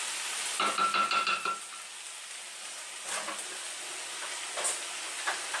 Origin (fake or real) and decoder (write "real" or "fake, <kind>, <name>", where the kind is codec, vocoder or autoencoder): real